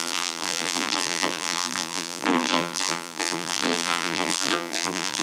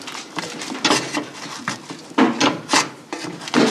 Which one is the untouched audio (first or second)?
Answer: second